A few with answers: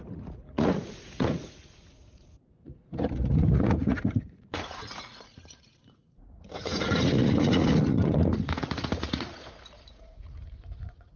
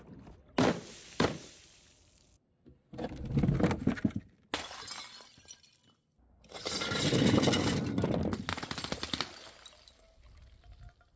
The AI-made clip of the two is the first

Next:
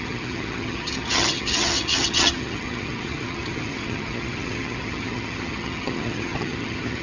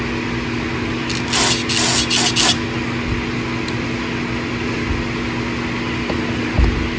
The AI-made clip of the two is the first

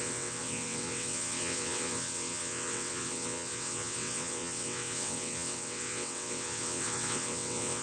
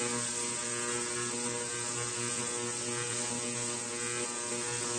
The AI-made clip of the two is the first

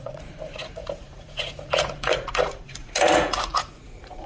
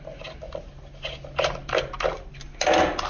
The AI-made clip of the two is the first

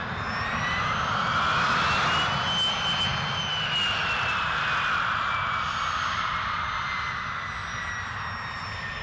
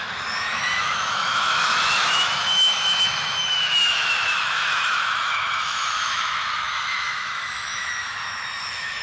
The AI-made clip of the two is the second